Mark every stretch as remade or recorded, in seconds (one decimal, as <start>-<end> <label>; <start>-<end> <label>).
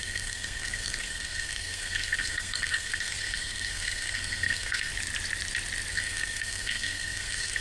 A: 0.0-4.9 remade; 4.9-5.9 recorded; 5.9-7.6 remade